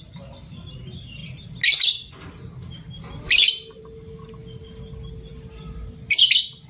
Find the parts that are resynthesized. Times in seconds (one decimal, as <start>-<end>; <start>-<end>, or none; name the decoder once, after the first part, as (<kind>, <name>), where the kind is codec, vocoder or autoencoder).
none